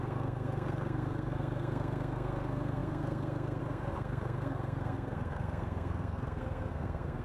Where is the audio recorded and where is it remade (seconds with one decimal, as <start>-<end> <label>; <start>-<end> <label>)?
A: 0.0-7.2 remade